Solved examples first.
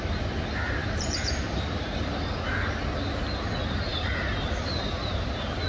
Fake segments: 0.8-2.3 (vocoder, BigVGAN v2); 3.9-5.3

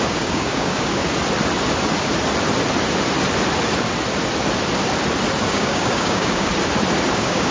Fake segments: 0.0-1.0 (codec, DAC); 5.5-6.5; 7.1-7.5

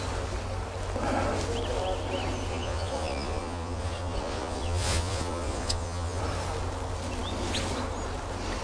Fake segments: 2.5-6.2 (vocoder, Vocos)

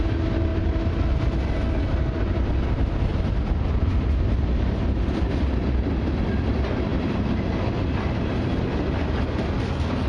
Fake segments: 0.5-1.2 (vocoder, BigVGAN v2); 3.1-5.1; 6.9-7.6